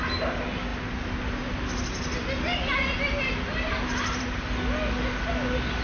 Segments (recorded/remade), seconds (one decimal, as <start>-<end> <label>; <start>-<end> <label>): 0.0-5.8 recorded